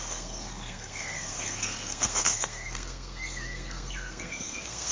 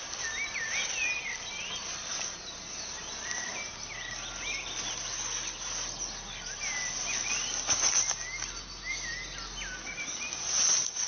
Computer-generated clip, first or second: first